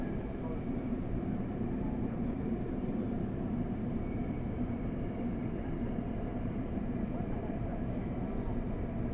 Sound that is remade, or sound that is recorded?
remade